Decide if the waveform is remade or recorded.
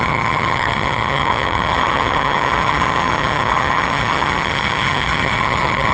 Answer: remade